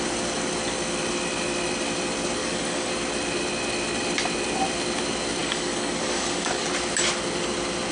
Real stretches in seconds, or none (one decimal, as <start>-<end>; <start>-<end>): 0.0-2.4; 2.9-5.4; 6.7-7.9